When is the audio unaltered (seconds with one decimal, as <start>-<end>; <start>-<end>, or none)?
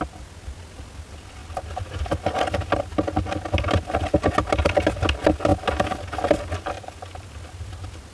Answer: 0.0-8.1